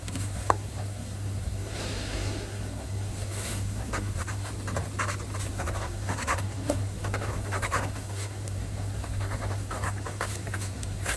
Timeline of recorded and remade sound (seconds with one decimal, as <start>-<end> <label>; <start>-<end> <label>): 0.0-4.5 remade; 4.5-5.5 recorded; 5.5-11.2 remade